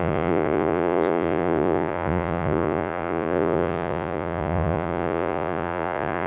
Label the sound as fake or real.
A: fake